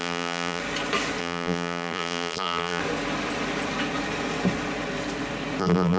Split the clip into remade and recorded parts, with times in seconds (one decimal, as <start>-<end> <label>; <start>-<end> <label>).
0.0-0.6 remade; 0.6-1.2 recorded; 1.2-2.8 remade; 2.8-5.6 recorded; 5.6-6.0 remade